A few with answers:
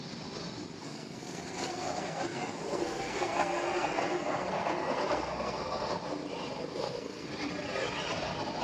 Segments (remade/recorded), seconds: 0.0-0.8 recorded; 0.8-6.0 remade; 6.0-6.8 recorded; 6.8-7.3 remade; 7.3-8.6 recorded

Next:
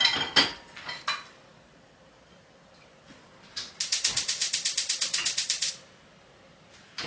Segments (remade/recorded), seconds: 0.0-7.1 recorded

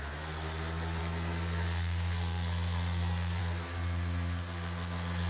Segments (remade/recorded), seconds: 0.0-1.0 recorded; 1.0-3.4 remade; 3.4-5.3 recorded

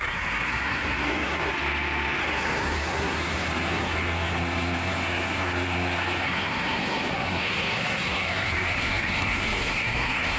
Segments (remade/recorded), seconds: 0.0-1.5 remade; 1.5-2.2 recorded; 2.2-10.4 remade